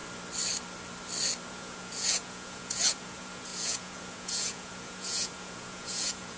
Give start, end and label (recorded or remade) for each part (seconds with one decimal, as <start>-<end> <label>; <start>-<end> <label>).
0.0-1.5 recorded; 1.5-6.4 remade